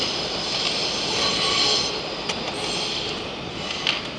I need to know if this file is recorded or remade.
recorded